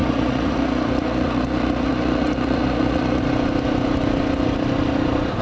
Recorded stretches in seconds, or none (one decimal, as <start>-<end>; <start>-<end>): 3.2-5.4